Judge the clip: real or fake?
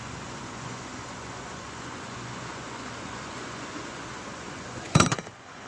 fake